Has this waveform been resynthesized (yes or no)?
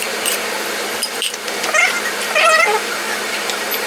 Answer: yes